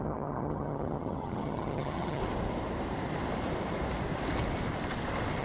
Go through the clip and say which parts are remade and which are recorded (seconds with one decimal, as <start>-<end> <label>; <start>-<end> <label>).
0.0-2.2 remade; 2.2-5.4 recorded